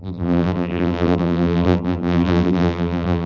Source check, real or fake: fake